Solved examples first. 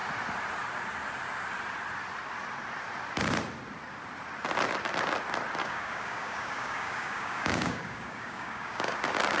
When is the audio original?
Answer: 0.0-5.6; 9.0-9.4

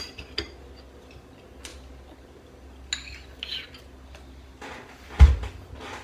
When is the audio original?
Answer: 0.0-6.0

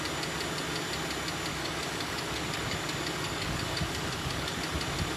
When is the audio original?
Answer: 0.0-1.5; 4.6-5.2